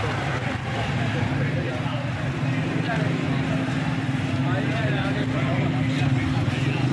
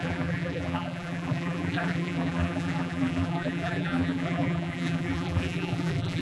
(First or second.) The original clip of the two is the first